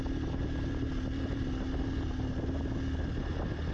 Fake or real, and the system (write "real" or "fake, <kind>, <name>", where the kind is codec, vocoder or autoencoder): real